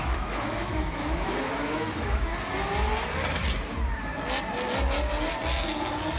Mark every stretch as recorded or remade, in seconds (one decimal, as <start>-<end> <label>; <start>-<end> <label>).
0.0-2.3 remade; 2.3-6.2 recorded